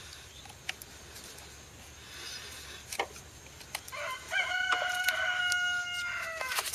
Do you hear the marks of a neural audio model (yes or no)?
no